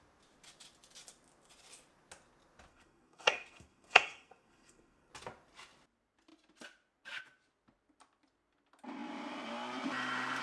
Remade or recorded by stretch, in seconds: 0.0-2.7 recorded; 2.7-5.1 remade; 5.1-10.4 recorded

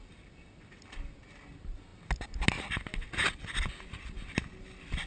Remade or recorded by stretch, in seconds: 0.0-5.1 recorded

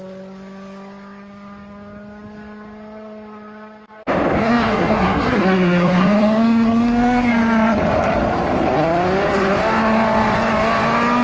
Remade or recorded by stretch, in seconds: 0.0-4.4 recorded; 4.4-7.3 remade; 7.3-11.2 recorded